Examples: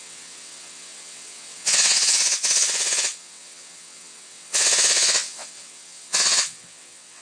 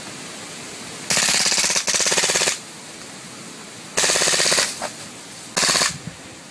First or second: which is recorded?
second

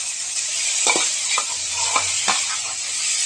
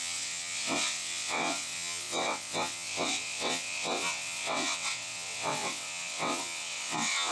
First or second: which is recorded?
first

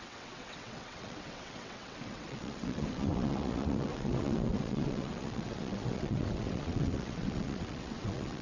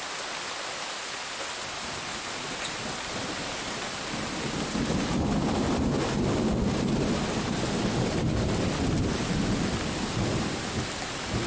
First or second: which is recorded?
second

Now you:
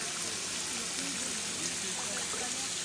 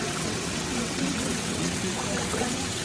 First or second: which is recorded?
first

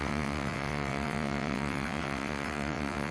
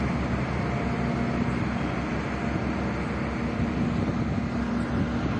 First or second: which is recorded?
second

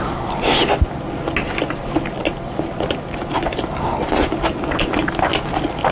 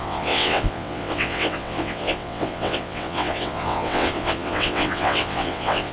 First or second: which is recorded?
first